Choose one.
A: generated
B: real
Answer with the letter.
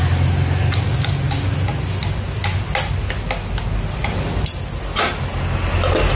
B